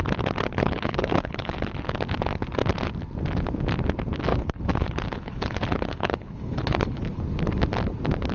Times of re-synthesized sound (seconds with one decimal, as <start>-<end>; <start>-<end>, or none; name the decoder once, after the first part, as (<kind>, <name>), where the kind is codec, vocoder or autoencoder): 0.6-1.6 (codec, HILCodec); 4.3-7.2